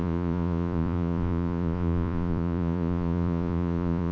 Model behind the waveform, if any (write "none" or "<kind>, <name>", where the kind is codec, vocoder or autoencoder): vocoder, Vocos